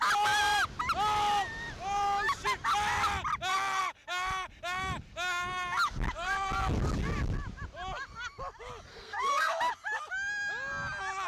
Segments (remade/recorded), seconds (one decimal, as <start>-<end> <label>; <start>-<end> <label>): 0.0-8.9 recorded; 8.9-9.6 remade; 9.6-11.3 recorded